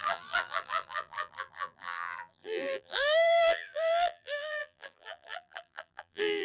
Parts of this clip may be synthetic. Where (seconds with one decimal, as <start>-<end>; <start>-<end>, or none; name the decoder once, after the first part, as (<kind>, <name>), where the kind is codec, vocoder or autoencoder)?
0.0-6.4 (vocoder, BigVGAN v2)